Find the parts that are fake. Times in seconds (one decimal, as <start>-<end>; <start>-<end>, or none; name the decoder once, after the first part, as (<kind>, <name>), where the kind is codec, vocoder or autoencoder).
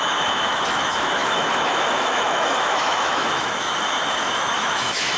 0.0-5.2 (autoencoder, DAC-VAE)